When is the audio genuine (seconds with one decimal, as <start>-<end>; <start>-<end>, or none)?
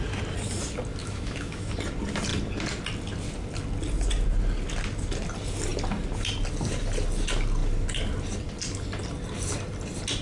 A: 0.0-1.0; 1.7-10.2